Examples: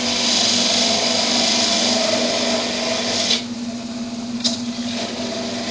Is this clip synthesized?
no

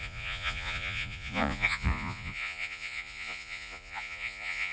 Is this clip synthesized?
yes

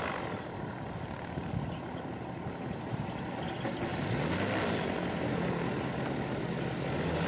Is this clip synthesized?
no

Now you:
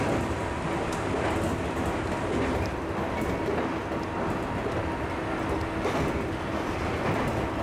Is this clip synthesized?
no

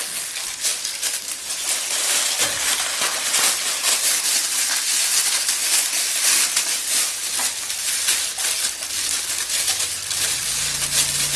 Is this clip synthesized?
no